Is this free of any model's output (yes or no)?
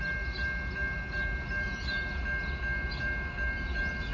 yes